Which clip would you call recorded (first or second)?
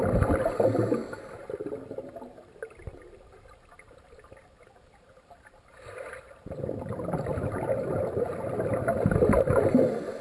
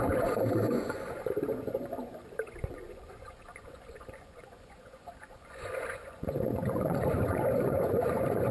first